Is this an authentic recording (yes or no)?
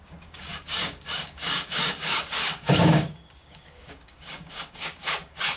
no